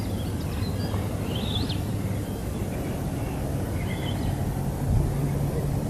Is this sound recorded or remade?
recorded